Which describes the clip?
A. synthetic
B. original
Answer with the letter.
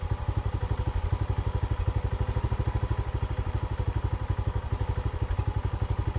B